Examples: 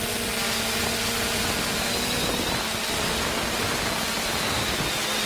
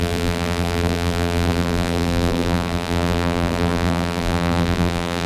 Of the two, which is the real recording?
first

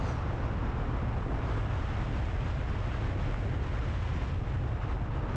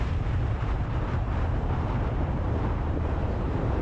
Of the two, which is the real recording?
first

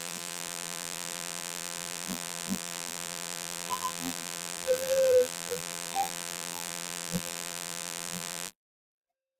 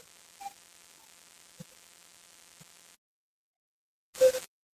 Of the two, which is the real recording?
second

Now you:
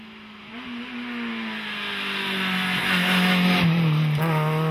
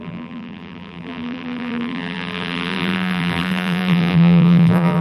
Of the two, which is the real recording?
first